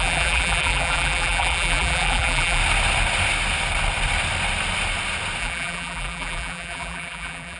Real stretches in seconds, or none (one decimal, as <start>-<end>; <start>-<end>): 2.6-5.4